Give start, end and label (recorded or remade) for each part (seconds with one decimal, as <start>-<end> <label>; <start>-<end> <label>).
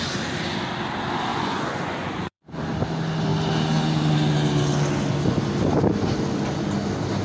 0.0-1.3 recorded; 1.3-2.6 remade; 2.6-7.2 recorded